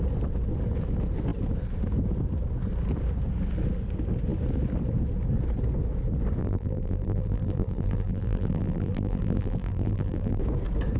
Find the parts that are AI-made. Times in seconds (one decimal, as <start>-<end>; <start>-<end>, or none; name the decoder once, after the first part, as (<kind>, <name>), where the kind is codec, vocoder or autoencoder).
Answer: 6.4-10.4 (vocoder, BigVGAN v2)